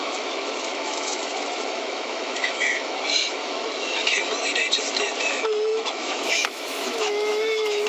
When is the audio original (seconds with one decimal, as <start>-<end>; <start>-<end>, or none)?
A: 4.0-5.2

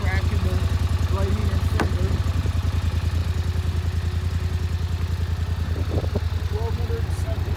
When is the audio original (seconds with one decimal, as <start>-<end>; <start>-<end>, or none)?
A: 0.0-7.6

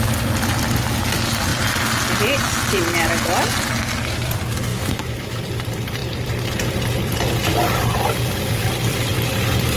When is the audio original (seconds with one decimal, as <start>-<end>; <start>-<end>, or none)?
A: 0.0-4.7; 5.4-9.8

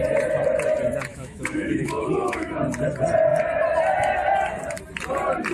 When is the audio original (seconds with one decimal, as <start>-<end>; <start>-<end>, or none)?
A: 0.0-1.1; 2.5-5.5

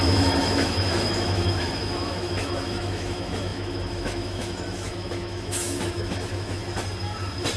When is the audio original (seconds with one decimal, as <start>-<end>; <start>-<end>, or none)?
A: 6.6-7.6